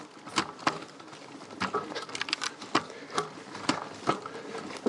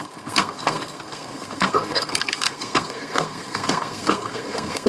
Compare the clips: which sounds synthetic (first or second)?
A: second